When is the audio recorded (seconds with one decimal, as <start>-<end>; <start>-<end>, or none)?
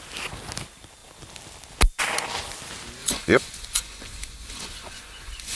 0.0-3.0